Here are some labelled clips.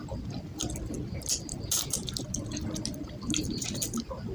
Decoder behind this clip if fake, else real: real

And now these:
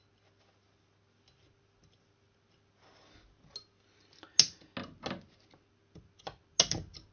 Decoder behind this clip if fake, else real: real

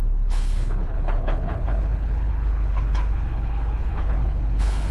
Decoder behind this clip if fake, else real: fake, codec, HILCodec